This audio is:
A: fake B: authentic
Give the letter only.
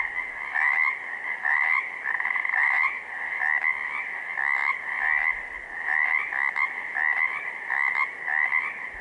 B